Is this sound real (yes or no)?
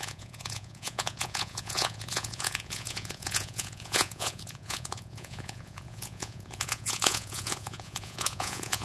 no